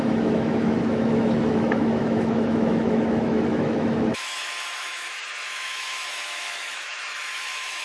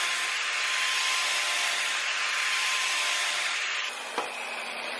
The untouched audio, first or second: second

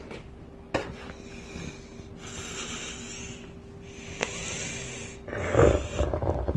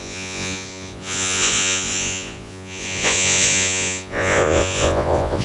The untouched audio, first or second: first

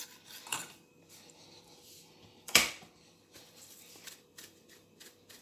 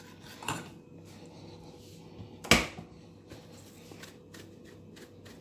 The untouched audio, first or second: second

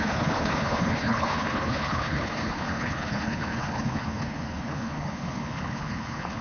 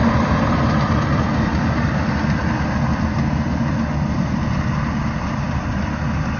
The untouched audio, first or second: second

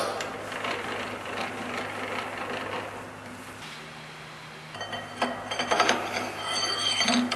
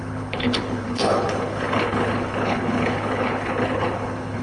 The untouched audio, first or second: first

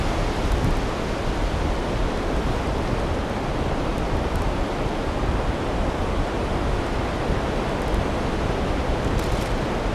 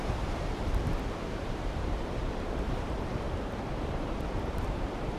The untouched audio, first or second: first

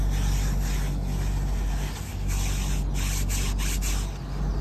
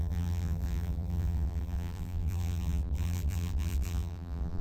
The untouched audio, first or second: first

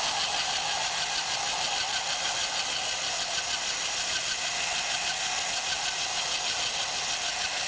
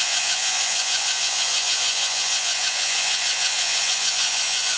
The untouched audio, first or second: first